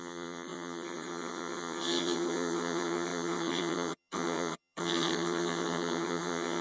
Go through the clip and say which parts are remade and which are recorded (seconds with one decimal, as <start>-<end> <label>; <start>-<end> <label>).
0.0-6.6 remade